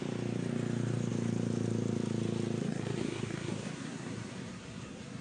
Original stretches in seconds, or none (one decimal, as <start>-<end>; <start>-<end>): 0.0-2.6